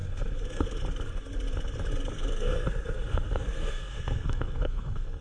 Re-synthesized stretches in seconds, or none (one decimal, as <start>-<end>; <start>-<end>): 0.0-0.8; 2.1-5.2